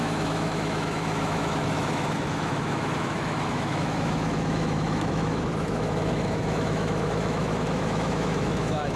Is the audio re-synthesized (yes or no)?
yes